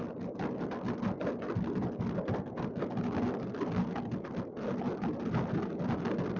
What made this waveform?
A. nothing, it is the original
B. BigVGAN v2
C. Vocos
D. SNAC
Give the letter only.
A